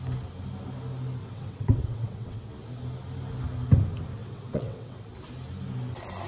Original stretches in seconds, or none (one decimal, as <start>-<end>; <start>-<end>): 0.0-1.2; 2.4-4.2; 5.0-6.3